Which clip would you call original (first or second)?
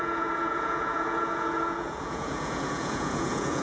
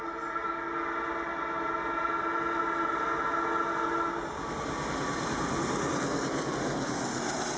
second